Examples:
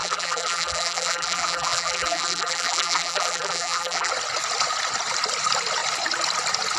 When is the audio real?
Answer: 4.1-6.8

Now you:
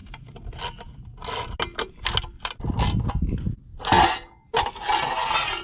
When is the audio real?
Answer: 0.6-5.6

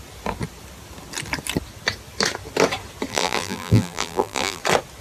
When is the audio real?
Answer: 0.0-3.1; 4.6-5.0